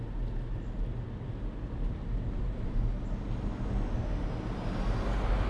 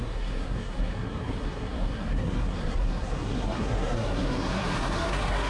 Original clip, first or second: first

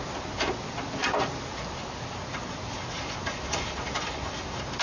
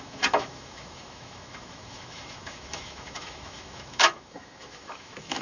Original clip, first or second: first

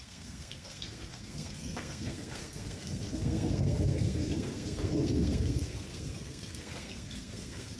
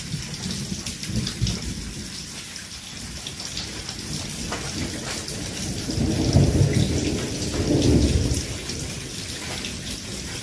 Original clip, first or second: second